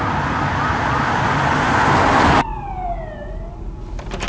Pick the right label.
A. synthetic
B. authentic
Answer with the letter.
B